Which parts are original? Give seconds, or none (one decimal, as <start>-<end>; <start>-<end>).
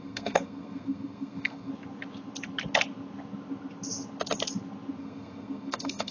1.7-5.0